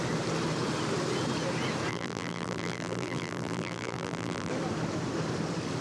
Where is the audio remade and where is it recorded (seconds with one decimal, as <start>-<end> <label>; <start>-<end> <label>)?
0.0-1.9 recorded; 1.9-4.5 remade; 4.5-5.8 recorded